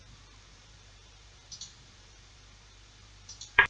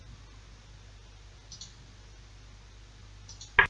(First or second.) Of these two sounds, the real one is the second